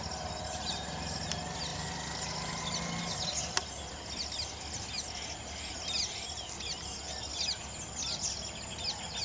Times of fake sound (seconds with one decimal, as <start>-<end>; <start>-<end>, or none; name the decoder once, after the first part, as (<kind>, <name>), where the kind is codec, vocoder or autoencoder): none